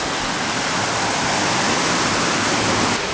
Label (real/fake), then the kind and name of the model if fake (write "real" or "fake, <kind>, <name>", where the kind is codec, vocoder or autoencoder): real